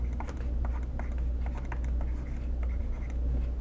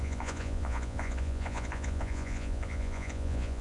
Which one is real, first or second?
first